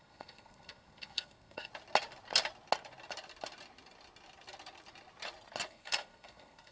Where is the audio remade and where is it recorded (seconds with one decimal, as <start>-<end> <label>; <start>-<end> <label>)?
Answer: 0.0-1.7 remade; 1.7-5.7 recorded; 5.7-6.7 remade